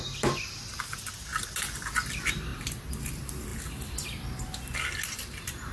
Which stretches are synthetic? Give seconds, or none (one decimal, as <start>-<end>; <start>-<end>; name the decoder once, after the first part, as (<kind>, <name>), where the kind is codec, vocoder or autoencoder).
0.0-3.5 (vocoder, BigVGAN v2); 5.2-5.7